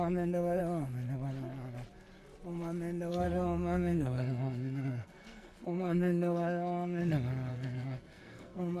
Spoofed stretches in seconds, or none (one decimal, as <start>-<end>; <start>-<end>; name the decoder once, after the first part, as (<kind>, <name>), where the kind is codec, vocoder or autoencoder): 0.0-0.6 (codec, SNAC); 3.1-7.0; 7.5-8.8